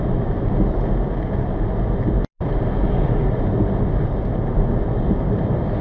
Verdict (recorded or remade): recorded